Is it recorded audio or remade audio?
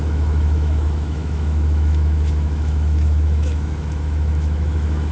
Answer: remade